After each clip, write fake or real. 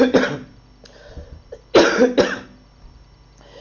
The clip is real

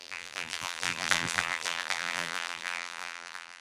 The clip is fake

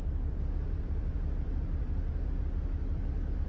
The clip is fake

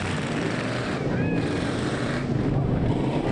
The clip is fake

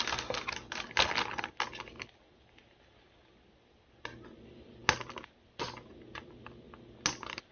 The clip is real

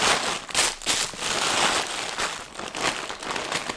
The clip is real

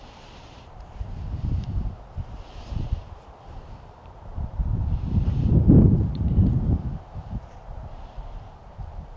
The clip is fake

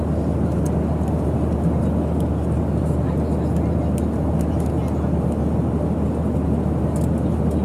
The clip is real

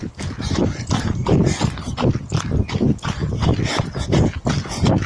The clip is real